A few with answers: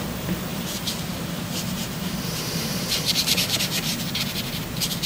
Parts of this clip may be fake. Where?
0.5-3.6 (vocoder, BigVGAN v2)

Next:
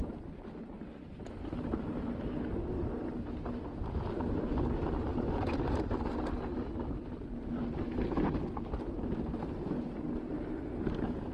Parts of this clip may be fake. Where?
5.1-6.3 (vocoder, BigVGAN v2)

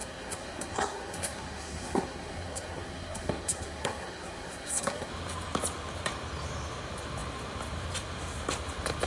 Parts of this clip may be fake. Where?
0.0-5.1 (codec, SNAC)

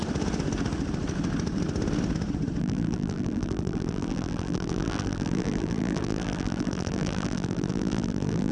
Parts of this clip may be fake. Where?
2.6-8.5 (vocoder, BigVGAN v2)

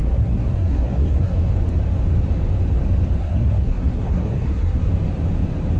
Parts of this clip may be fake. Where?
0.0-1.5 (codec, SNAC); 3.2-4.9

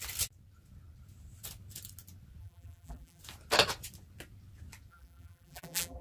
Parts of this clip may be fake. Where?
2.4-3.2 (vocoder, BigVGAN v2); 4.9-6.0